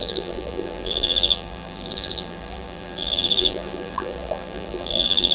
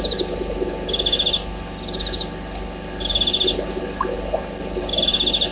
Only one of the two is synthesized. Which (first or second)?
first